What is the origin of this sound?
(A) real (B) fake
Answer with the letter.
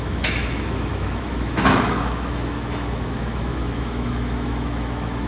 B